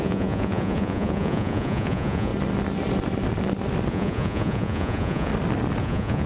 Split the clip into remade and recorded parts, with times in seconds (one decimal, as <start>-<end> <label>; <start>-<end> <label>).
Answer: 0.0-2.3 remade; 2.3-3.9 recorded; 3.9-5.3 remade; 5.3-5.8 recorded; 5.8-6.3 remade

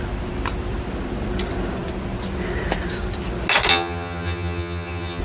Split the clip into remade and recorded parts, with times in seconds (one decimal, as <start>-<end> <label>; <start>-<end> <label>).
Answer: 0.0-3.7 recorded; 3.7-5.2 remade

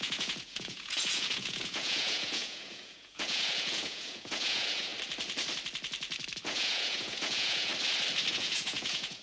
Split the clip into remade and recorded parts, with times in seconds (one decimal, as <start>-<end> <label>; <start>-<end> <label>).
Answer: 0.0-4.9 remade; 4.9-6.4 recorded; 6.4-7.7 remade; 7.7-8.3 recorded; 8.3-9.2 remade